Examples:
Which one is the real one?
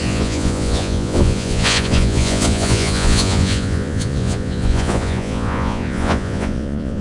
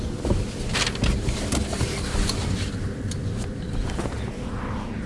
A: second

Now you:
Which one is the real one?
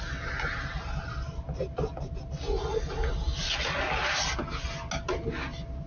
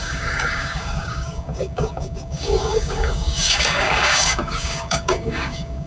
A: first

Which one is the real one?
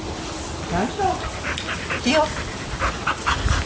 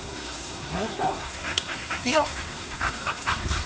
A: first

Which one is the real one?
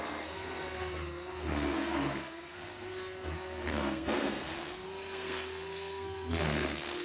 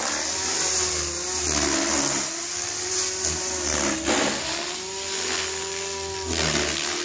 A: second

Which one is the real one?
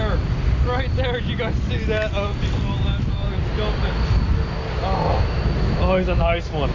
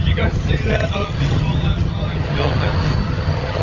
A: first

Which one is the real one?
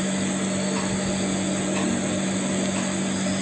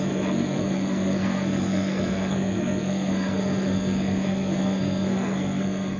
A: first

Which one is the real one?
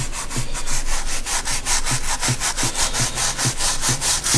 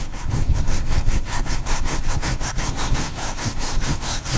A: first